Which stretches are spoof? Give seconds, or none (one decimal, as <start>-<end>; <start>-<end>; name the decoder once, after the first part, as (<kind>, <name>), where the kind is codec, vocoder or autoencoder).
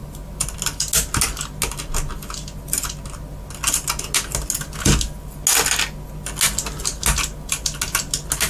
none